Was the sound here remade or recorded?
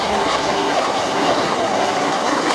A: remade